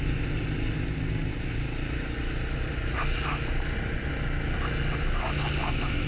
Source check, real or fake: real